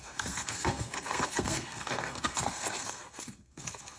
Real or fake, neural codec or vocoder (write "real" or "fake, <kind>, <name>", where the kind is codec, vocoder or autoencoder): fake, codec, SNAC